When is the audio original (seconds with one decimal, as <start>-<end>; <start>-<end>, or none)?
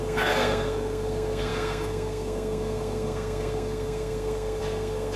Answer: none